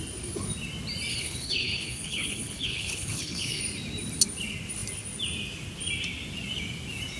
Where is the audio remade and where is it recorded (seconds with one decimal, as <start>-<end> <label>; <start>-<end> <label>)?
0.0-1.1 recorded; 1.1-3.6 remade; 3.6-7.2 recorded

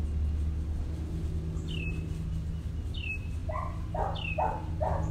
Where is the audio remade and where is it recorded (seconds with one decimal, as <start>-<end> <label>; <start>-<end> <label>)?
0.0-5.1 recorded